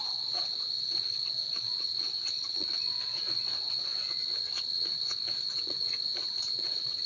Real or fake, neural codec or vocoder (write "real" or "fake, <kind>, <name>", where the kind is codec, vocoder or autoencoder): fake, vocoder, Vocos